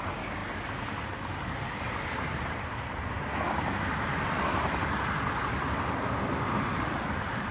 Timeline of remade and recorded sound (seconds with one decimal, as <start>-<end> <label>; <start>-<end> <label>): 0.0-7.5 recorded